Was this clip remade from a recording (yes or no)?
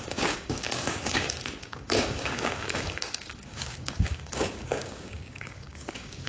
yes